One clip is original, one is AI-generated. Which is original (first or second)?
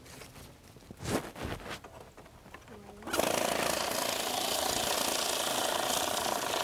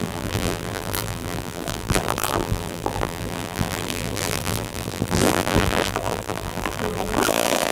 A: first